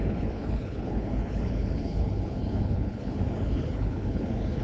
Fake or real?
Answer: fake